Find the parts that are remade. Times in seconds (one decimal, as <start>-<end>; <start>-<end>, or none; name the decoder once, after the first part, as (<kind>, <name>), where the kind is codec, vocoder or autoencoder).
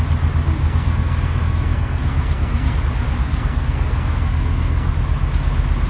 0.6-2.8 (codec, SNAC); 3.2-4.9